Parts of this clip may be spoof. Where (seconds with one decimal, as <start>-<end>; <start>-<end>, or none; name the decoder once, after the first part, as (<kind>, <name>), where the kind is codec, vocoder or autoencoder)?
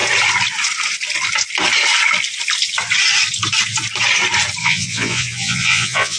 4.6-6.2 (vocoder, Vocos)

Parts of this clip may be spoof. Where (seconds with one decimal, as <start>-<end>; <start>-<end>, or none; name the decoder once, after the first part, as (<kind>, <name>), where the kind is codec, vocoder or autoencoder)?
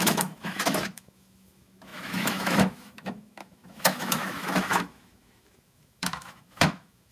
0.0-7.1 (autoencoder, DAC-VAE)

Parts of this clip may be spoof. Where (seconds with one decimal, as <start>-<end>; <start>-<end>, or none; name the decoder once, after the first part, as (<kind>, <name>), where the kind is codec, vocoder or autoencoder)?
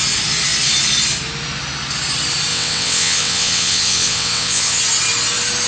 2.5-4.8 (vocoder, WaveNeXt)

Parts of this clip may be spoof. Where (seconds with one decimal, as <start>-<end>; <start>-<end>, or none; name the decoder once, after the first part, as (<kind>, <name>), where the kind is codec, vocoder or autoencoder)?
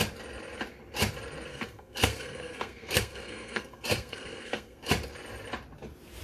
1.5-4.9 (codec, SNAC)